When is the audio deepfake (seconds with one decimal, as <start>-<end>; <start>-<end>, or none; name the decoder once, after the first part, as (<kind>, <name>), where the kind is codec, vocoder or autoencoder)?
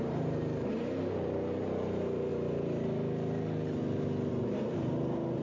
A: 0.0-2.3 (vocoder, BigVGAN v2); 4.3-5.4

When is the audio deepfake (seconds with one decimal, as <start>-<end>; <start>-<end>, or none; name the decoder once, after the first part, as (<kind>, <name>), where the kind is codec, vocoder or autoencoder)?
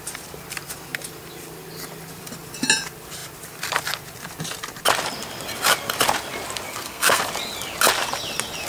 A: 6.7-7.2 (codec, SNAC)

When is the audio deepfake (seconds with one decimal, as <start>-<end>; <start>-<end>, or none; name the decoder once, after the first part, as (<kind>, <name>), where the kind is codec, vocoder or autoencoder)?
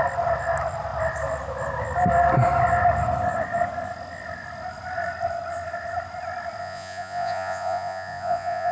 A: 6.6-8.7 (vocoder, Vocos)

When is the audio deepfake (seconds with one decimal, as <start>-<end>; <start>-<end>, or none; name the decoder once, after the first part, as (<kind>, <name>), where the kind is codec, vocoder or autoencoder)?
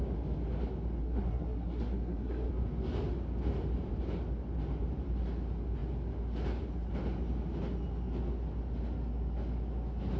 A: 1.0-2.5 (codec, SNAC)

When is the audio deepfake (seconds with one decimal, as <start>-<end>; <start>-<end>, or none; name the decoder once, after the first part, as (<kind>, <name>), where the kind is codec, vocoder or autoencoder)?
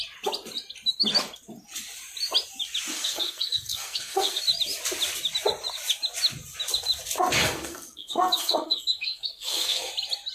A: 2.9-4.4 (codec, SNAC); 7.4-9.9